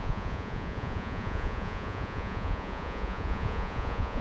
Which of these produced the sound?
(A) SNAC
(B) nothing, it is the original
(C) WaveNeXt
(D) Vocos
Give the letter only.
D